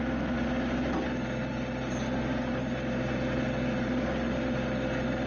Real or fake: real